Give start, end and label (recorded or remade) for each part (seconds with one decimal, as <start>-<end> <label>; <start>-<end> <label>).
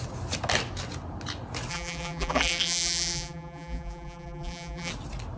0.0-1.7 recorded; 1.7-4.9 remade; 4.9-5.4 recorded